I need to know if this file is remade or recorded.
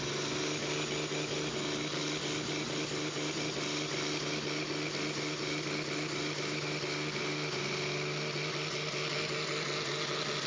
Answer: recorded